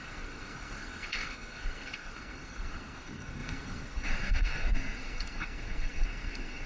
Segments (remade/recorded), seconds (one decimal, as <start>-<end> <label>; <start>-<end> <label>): 0.0-6.7 remade